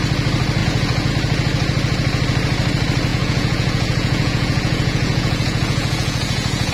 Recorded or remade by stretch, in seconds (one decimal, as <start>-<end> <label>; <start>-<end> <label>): 0.0-0.6 recorded; 0.6-1.1 remade; 1.1-3.1 recorded; 3.1-6.7 remade